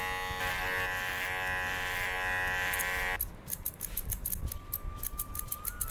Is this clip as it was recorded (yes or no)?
yes